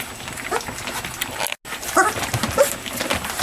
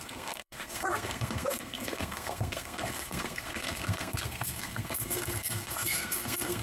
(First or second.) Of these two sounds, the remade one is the second